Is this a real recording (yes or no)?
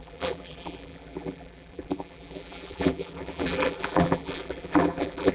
no